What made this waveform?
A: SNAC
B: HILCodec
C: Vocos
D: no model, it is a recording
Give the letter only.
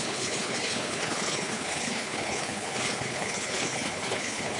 B